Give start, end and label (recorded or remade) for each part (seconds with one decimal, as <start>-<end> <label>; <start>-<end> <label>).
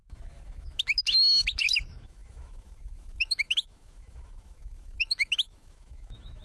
0.0-6.4 remade